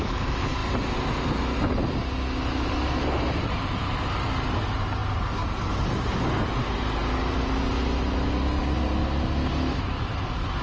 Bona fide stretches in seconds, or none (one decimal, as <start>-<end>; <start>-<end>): 0.0-10.6